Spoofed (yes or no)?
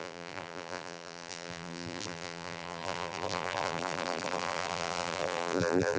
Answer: yes